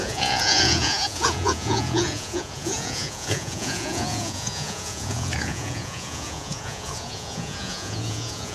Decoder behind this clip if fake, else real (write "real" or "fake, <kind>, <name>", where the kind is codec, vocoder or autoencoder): fake, vocoder, Vocos